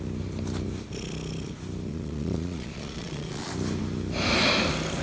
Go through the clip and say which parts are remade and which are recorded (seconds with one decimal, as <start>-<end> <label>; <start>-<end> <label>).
0.0-1.9 recorded; 1.9-3.5 remade; 3.5-5.0 recorded